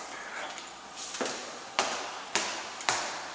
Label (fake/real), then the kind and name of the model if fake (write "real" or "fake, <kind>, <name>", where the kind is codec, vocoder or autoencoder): real